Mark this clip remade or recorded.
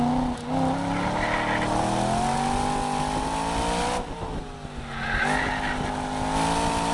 recorded